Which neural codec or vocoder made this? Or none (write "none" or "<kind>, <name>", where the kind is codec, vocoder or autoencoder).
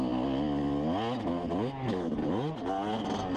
none